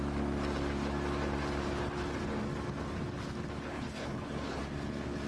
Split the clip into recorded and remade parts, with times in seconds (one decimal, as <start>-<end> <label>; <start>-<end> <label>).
0.0-3.7 recorded; 3.7-4.6 remade; 4.6-5.3 recorded